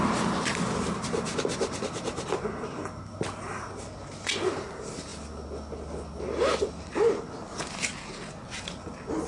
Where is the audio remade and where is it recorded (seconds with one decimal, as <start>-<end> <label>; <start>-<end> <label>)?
0.0-9.3 recorded

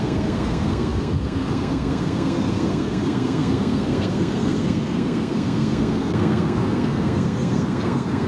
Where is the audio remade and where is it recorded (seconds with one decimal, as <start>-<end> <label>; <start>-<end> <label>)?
0.0-8.3 remade